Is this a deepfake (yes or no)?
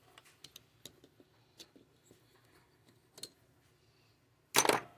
no